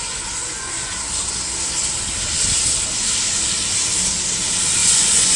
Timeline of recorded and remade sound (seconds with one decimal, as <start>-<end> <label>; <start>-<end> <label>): 0.0-0.9 remade; 0.9-4.8 recorded; 4.8-5.4 remade